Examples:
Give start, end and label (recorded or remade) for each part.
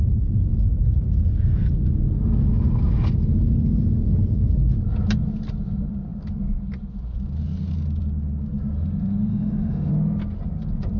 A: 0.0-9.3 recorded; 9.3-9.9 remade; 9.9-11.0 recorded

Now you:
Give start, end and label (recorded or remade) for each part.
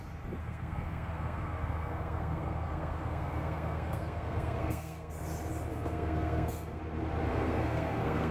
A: 0.0-0.4 recorded; 0.4-5.1 remade; 5.1-5.7 recorded; 5.7-6.8 remade; 6.8-7.3 recorded; 7.3-8.3 remade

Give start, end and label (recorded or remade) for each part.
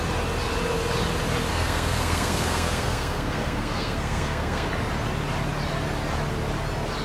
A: 0.0-1.5 recorded; 1.5-4.7 remade; 4.7-7.0 recorded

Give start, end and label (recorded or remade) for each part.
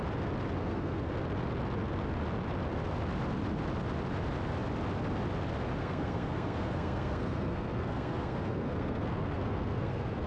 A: 0.0-0.6 recorded; 0.6-1.1 remade; 1.1-5.8 recorded; 5.8-10.3 remade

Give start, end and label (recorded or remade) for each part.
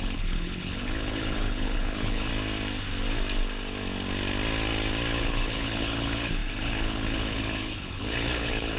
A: 0.0-2.3 remade; 2.3-5.2 recorded; 5.2-8.8 remade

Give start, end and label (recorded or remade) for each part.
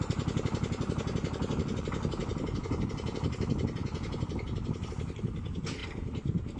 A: 0.0-6.6 remade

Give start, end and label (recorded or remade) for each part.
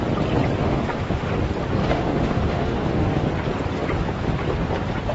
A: 0.0-0.6 recorded; 0.6-1.3 remade; 1.3-1.8 recorded; 1.8-3.3 remade; 3.3-5.1 recorded